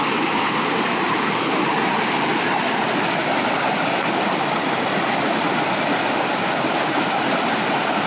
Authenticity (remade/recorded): recorded